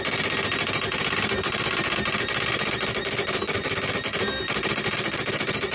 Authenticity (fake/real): real